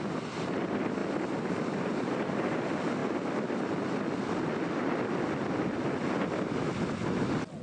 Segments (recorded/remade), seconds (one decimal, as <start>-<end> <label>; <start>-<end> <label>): 0.0-7.6 recorded